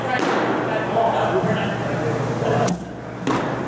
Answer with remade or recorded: recorded